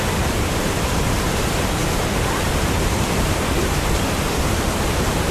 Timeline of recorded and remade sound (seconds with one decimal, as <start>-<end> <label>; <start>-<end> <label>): 0.0-1.8 remade; 1.8-4.1 recorded; 4.1-5.3 remade